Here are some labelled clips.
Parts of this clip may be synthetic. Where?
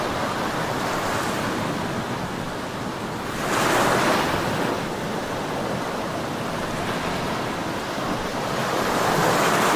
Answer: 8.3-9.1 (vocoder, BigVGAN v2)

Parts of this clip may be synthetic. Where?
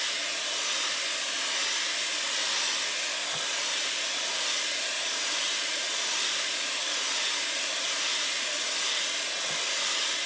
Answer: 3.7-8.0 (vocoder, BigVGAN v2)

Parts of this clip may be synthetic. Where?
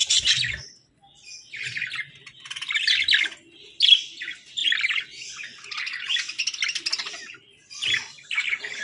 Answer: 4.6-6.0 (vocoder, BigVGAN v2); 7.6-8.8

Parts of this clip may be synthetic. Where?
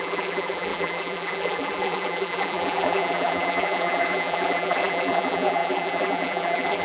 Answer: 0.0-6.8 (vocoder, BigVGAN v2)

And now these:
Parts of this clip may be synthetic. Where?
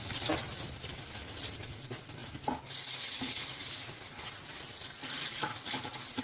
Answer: 5.0-6.2 (vocoder, BigVGAN v2)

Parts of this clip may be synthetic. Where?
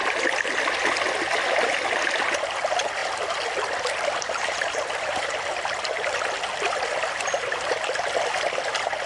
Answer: 3.0-5.8 (vocoder, BigVGAN v2)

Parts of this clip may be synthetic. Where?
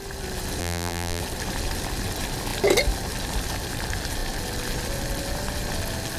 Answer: 0.6-1.2 (vocoder, BigVGAN v2)